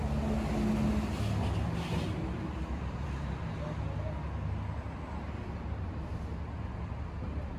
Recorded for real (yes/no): yes